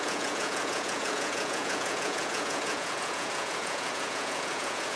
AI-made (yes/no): yes